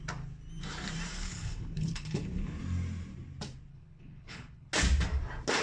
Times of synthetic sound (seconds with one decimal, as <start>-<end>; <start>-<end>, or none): 1.1-2.6; 3.7-4.7